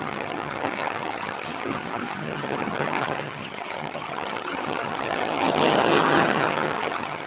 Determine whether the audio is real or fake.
fake